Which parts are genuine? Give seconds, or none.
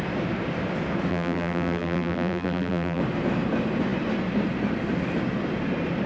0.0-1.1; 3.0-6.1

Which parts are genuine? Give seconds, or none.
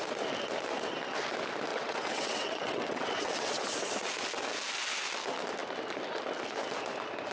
0.0-1.7; 3.6-7.3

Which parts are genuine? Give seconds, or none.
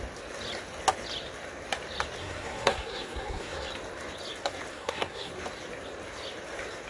0.0-2.2; 3.7-4.7; 5.3-6.9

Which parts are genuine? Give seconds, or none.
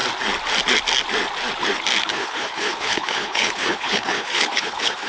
0.0-2.0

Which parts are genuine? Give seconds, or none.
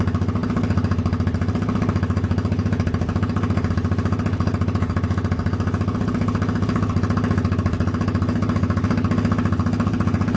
0.0-10.4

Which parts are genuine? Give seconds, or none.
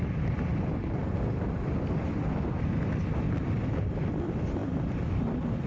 0.0-5.7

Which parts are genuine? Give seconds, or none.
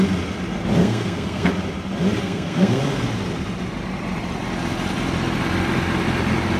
0.0-0.8; 1.5-2.2; 2.8-6.6